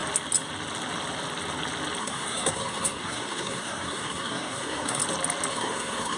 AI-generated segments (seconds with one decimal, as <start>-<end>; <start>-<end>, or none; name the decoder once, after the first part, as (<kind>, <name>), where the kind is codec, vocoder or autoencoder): 2.0-5.0 (codec, SNAC); 5.5-6.2